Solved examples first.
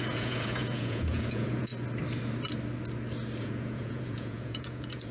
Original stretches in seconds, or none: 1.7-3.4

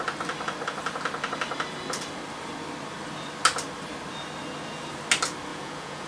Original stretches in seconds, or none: 0.0-5.5

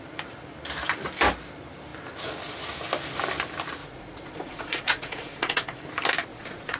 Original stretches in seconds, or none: 0.0-3.8; 5.8-6.3

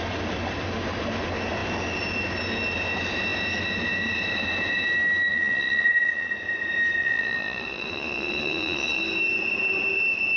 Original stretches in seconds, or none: 0.0-5.3; 6.3-7.0; 9.0-10.4

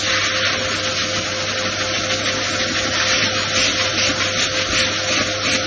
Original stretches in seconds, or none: 0.0-5.7

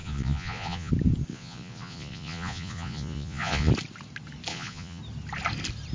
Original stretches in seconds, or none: 0.9-1.3; 3.7-4.5; 5.0-5.9